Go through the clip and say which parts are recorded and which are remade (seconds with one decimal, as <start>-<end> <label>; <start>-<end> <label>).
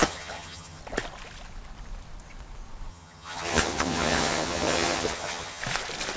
0.0-0.8 remade; 0.8-2.9 recorded; 2.9-5.6 remade; 5.6-6.2 recorded